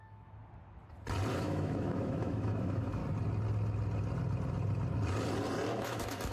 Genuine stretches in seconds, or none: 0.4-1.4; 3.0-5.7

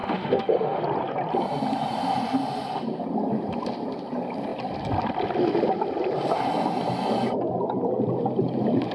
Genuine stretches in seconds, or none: 0.8-8.9